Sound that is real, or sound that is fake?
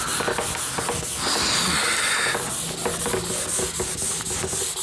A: real